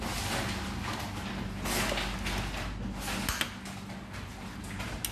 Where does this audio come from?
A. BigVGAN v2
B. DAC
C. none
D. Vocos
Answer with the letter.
C